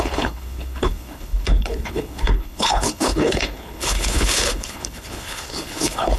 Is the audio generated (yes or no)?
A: yes